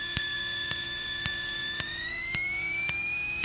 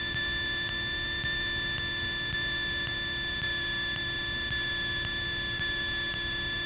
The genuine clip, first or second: second